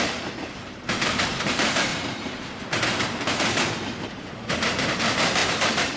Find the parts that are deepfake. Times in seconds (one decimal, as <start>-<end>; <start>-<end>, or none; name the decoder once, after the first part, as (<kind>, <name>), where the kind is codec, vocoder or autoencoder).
0.0-6.0 (vocoder, BigVGAN v2)